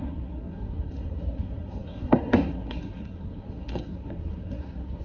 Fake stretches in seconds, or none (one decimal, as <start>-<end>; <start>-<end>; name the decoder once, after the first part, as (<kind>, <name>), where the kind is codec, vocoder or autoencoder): 0.0-5.0 (codec, SNAC)